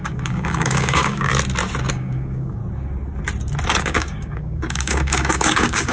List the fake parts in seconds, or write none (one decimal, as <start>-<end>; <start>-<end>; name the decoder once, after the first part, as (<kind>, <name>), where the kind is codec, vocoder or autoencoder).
0.0-1.3 (codec, DAC); 1.9-2.6; 3.8-5.9